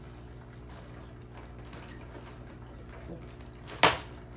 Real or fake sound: real